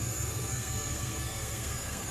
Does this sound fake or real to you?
fake